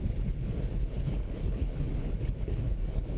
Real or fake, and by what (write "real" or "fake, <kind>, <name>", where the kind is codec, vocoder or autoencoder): fake, codec, HILCodec